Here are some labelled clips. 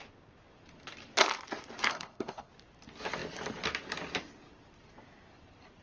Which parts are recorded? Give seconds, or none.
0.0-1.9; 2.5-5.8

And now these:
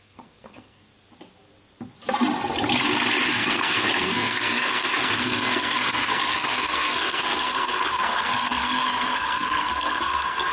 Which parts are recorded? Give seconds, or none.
0.9-3.3

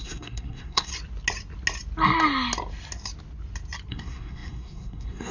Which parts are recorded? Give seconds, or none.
0.9-3.9

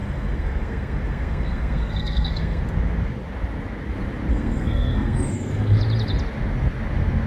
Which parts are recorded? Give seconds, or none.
2.6-4.3; 5.8-7.3